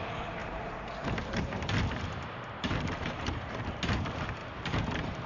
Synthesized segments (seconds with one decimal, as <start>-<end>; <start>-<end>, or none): 0.4-3.6; 4.4-5.3